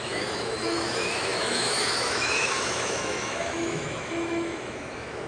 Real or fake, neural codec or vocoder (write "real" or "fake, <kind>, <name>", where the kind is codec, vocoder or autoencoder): fake, autoencoder, DAC-VAE